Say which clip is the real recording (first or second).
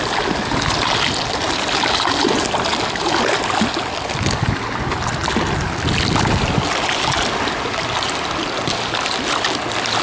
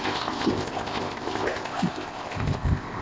first